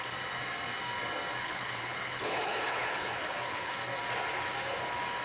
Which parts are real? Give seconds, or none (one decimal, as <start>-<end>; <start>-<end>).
0.0-1.4; 3.7-5.2